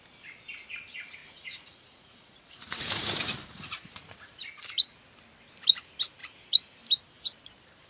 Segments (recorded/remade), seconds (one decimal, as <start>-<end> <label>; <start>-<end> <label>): 0.0-1.2 recorded; 1.2-4.0 remade; 4.0-7.9 recorded